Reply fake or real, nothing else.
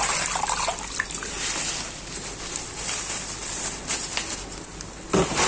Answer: real